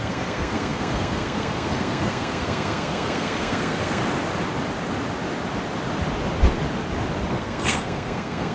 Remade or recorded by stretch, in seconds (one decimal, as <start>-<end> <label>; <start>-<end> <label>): 0.0-4.0 remade; 4.0-7.3 recorded; 7.3-8.5 remade